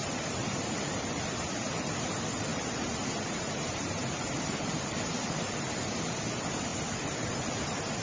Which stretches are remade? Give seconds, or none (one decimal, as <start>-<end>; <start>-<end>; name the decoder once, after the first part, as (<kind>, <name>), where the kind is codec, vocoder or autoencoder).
2.5-5.6 (vocoder, BigVGAN v2)